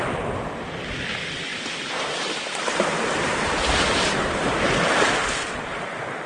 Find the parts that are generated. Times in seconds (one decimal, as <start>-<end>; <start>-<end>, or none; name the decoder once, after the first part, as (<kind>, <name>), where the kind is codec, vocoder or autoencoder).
1.5-4.9 (vocoder, BigVGAN v2)